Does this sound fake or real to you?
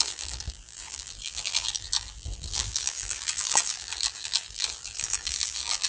fake